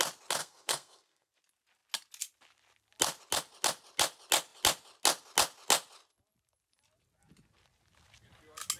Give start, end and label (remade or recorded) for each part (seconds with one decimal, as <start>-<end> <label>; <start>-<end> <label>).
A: 0.0-0.4 recorded; 0.4-1.3 remade; 1.3-8.8 recorded